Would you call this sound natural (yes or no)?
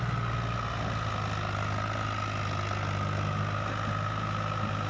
yes